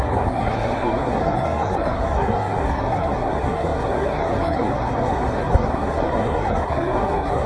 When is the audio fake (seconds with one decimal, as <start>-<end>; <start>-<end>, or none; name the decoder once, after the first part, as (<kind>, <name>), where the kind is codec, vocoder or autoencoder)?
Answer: 0.0-7.5 (codec, SNAC)